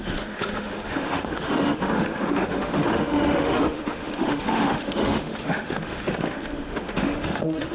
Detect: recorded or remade remade